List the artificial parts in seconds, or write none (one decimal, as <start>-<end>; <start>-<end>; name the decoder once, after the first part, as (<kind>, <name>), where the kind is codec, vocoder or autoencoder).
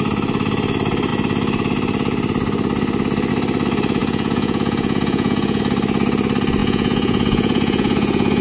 4.0-5.6 (vocoder, Vocos); 6.6-8.4